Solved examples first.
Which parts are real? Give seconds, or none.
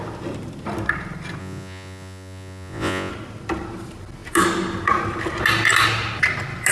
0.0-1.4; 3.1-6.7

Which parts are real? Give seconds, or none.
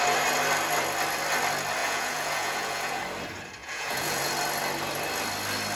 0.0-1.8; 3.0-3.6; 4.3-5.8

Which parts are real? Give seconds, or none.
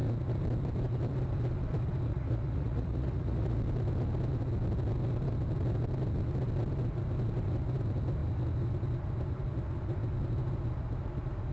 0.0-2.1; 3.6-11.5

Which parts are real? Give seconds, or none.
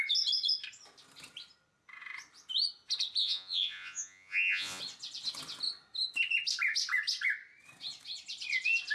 0.0-3.2; 4.8-8.9